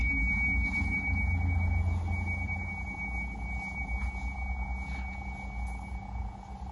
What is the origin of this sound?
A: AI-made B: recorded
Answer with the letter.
B